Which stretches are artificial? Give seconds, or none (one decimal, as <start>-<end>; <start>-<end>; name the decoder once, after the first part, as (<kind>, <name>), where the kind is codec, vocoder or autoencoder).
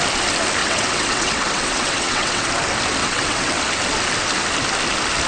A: 0.6-2.5 (vocoder, WaveNeXt); 3.0-3.6